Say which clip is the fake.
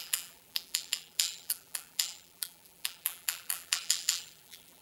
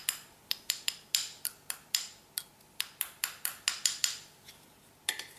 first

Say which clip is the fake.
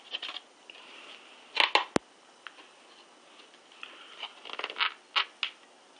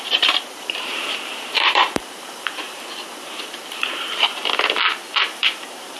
second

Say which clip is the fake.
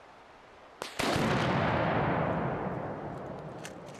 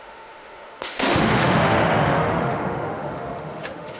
second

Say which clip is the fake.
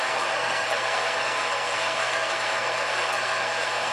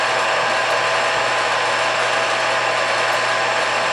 first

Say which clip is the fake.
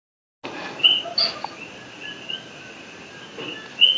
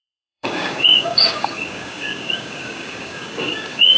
second